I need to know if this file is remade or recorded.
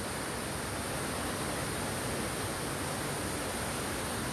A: recorded